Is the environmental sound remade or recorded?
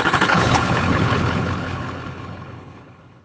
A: remade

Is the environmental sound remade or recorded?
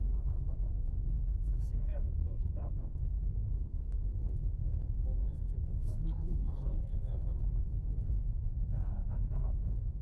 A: remade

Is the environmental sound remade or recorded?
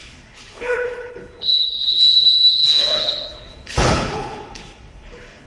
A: remade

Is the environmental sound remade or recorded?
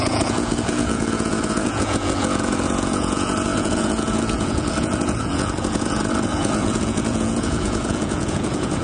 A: remade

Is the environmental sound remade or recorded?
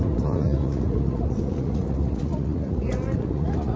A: remade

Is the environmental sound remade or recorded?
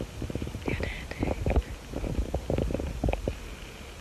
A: recorded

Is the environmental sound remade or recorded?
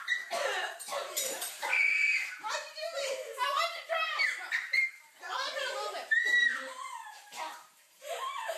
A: remade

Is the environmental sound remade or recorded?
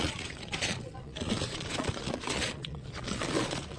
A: remade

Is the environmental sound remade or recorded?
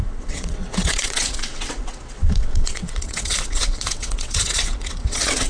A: remade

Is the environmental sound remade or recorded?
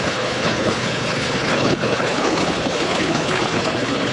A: remade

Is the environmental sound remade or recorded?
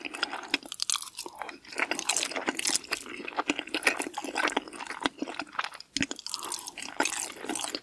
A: recorded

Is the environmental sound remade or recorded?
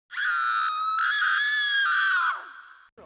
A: recorded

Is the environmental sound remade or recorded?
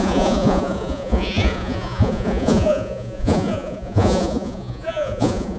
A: remade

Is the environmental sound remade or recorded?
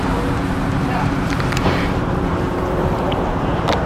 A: remade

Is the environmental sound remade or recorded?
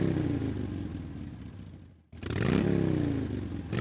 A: recorded